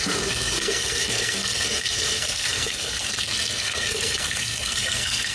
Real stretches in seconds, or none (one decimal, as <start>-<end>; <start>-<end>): none